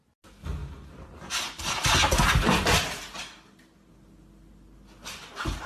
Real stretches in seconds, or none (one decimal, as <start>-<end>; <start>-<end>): 0.0-5.7